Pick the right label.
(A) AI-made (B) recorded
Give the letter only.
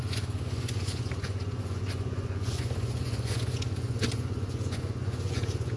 A